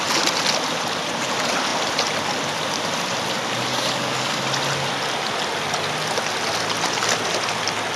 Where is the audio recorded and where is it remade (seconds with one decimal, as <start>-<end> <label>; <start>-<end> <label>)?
0.0-3.7 recorded; 3.7-4.4 remade; 4.4-8.0 recorded